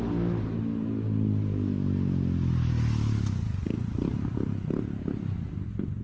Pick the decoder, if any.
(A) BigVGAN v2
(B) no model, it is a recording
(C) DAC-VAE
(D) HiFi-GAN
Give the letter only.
B